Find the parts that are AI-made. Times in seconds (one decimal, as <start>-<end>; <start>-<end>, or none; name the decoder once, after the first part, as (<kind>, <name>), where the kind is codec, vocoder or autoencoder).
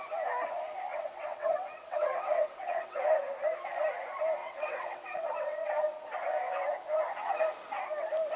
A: 0.9-3.0 (vocoder, WaveNeXt); 4.4-5.8